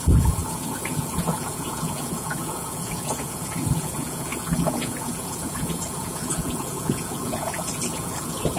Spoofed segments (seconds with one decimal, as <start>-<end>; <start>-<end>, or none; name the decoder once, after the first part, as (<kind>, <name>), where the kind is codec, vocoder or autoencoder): 0.0-8.6 (vocoder, Vocos)